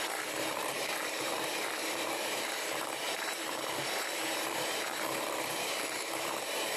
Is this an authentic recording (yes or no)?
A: no